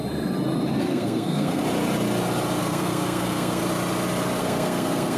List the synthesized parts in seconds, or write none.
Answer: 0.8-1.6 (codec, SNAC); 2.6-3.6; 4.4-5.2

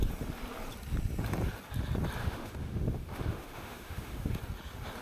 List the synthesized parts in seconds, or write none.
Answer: 2.2-4.3 (autoencoder, DAC-VAE)